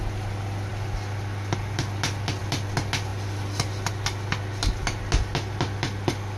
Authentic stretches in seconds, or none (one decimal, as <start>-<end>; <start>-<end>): 0.0-6.4